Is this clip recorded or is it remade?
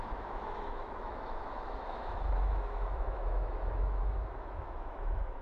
remade